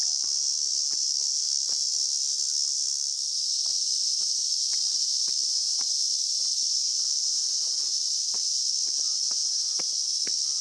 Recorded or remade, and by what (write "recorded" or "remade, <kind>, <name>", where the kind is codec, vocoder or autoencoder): recorded